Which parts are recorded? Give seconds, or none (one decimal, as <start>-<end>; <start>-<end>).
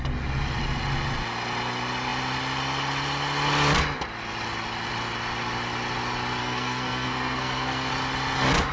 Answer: 0.0-6.4; 7.9-8.7